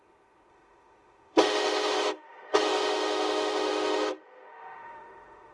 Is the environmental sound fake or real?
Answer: fake